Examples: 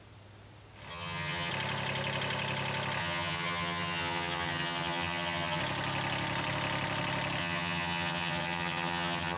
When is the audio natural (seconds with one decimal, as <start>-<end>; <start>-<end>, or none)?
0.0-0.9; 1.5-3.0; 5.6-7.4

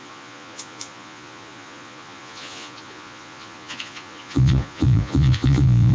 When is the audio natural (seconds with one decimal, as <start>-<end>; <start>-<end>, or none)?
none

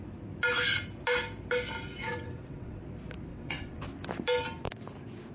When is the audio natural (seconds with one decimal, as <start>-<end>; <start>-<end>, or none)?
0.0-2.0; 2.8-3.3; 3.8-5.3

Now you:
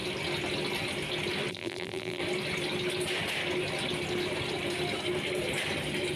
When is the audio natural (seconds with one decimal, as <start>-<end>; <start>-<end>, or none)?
0.0-1.5; 2.2-6.2

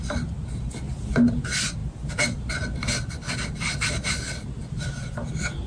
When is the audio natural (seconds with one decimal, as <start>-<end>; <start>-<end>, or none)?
0.0-4.6; 5.3-5.7

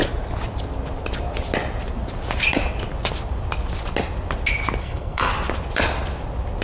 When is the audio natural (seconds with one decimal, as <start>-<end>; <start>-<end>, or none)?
0.0-4.8; 5.3-6.6